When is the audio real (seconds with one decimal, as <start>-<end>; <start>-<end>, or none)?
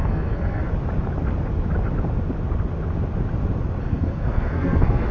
0.7-3.8